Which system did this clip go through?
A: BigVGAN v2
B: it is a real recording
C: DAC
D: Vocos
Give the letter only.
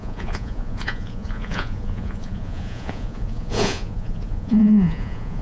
D